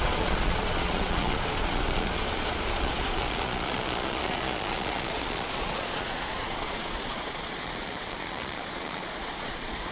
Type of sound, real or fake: fake